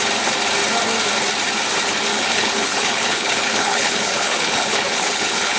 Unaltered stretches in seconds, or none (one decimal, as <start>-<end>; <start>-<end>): 0.0-2.1